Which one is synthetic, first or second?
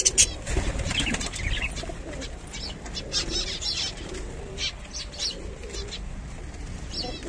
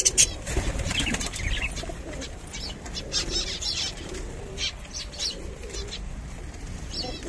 second